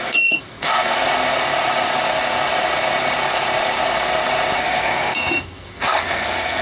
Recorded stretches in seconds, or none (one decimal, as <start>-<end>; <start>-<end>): 1.0-4.6